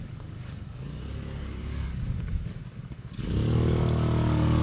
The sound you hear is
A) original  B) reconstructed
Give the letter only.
B